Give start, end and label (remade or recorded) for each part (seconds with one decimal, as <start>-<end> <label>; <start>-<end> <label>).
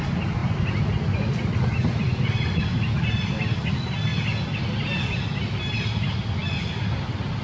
0.0-7.4 recorded